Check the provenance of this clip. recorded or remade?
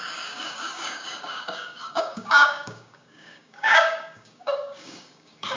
remade